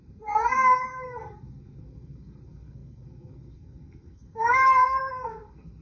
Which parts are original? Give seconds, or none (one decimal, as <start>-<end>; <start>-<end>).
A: none